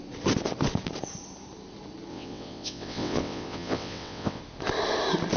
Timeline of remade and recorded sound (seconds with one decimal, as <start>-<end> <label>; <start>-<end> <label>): 0.0-2.1 recorded; 2.1-4.4 remade; 4.4-5.4 recorded